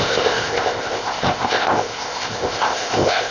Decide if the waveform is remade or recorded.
remade